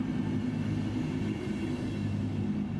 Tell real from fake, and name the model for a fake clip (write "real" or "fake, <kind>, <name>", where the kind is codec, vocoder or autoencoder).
real